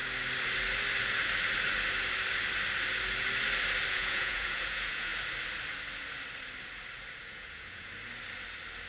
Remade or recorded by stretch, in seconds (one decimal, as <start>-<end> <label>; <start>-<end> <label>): 0.0-3.9 recorded; 3.9-5.1 remade; 5.1-7.2 recorded; 7.2-7.9 remade; 7.9-8.9 recorded